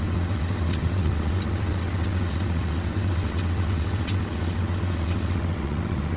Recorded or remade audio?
remade